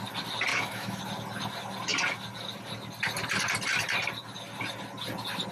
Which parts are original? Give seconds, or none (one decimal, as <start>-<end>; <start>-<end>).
0.0-0.5; 1.0-5.5